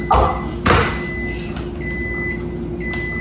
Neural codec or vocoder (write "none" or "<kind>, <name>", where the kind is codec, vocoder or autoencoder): none